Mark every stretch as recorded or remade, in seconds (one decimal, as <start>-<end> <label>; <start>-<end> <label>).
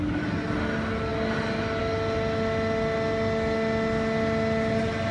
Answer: 0.0-5.1 recorded